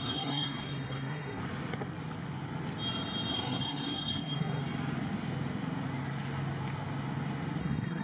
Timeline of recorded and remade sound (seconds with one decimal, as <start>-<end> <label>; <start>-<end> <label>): 0.0-1.4 remade; 1.4-3.3 recorded; 3.3-4.6 remade; 4.6-7.6 recorded; 7.6-8.0 remade